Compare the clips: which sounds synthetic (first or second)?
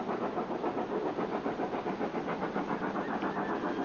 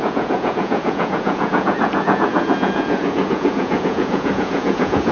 second